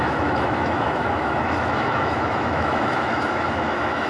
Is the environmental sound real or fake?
fake